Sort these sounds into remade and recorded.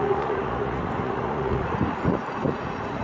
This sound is remade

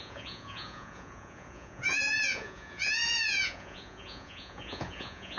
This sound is remade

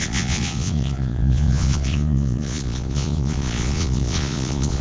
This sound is remade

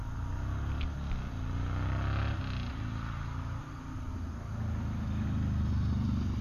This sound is recorded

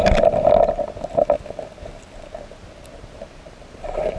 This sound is recorded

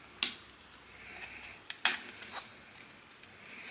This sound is recorded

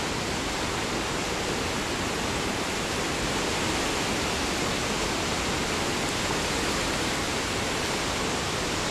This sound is recorded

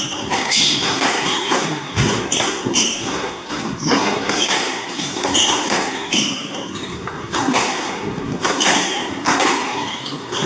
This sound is remade